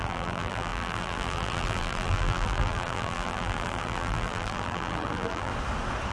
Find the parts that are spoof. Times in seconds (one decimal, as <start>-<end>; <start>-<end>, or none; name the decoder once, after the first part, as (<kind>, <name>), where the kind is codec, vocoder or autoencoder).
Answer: 0.0-5.5 (vocoder, BigVGAN v2)